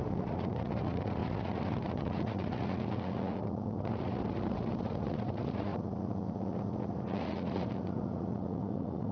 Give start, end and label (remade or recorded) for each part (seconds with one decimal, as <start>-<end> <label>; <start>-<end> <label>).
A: 0.0-9.1 remade